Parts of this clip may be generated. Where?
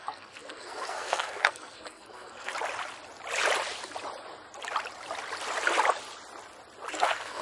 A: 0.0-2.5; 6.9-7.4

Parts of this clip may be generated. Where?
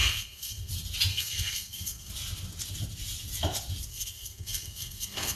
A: 0.0-0.7; 1.1-2.1; 3.9-5.4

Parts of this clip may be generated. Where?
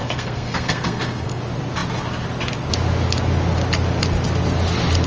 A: 0.0-1.4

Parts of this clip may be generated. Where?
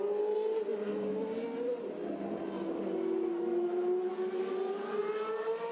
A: none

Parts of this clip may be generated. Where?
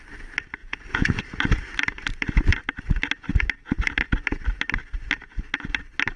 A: 0.6-1.2